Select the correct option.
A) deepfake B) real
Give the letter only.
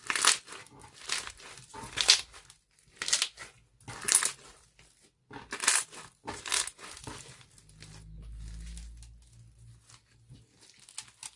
B